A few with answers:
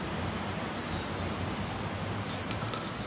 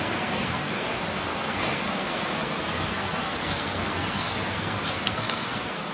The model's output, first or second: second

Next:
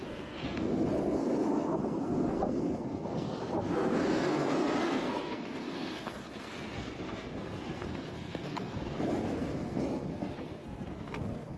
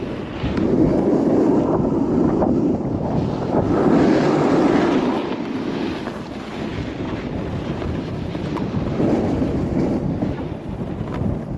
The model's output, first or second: first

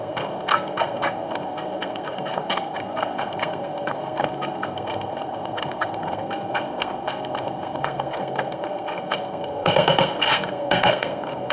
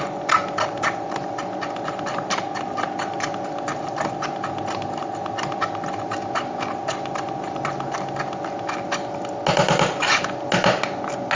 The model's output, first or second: first